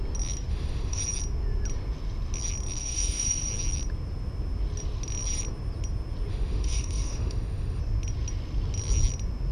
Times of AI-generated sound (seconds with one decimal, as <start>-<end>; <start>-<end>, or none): 0.5-1.0; 2.8-3.5; 6.3-7.8